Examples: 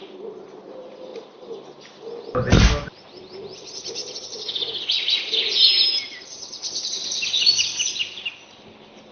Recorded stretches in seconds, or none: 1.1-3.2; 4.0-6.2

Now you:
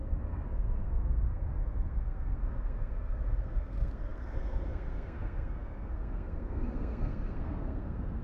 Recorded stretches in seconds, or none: none

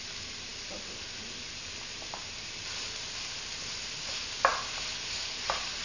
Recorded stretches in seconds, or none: 0.0-5.8